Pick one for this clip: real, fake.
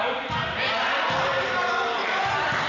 real